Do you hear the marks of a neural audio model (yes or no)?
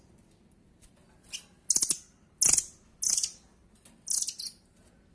no